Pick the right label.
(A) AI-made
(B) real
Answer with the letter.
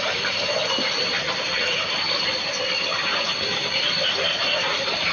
B